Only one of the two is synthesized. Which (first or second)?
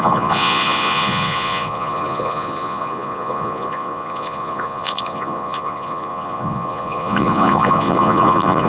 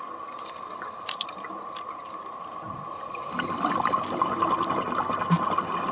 first